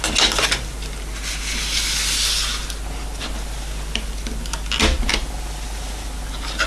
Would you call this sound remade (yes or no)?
no